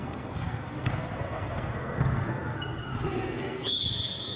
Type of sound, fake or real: fake